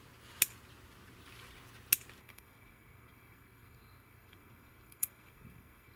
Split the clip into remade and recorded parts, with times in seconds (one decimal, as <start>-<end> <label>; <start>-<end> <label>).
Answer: 0.0-2.2 recorded; 2.2-6.0 remade